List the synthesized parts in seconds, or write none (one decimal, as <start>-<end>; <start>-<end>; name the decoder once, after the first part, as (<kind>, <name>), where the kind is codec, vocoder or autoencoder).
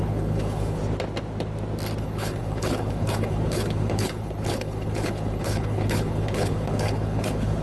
0.0-0.8 (codec, HILCodec); 2.0-7.6